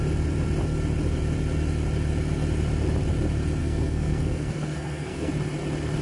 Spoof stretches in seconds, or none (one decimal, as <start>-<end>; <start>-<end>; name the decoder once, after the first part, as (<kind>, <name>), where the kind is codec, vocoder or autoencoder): 3.6-5.3 (codec, SNAC)